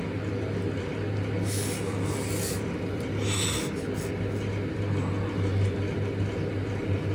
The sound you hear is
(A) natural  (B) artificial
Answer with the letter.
A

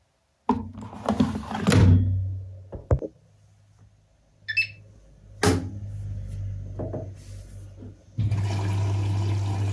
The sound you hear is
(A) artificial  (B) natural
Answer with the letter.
B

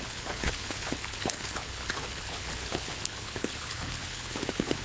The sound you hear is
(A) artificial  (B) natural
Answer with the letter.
A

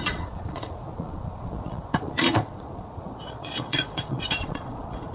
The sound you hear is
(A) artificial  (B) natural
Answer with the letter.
A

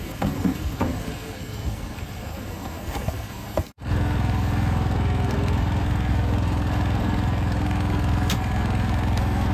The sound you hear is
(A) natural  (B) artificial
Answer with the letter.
B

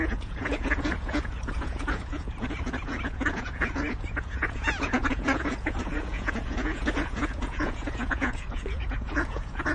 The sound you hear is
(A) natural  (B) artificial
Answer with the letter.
B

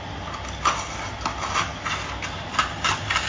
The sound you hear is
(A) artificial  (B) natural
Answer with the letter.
B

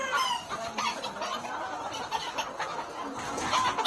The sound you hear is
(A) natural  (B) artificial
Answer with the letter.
A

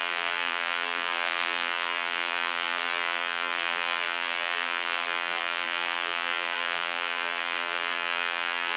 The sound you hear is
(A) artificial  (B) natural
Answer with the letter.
A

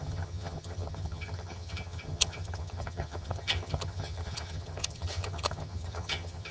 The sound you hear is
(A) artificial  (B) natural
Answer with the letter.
A